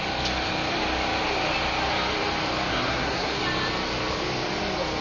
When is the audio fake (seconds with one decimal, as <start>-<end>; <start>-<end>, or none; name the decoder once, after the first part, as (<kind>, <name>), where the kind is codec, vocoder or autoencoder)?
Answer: 2.7-3.4 (codec, SNAC)